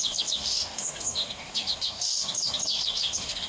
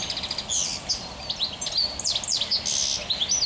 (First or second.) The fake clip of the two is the first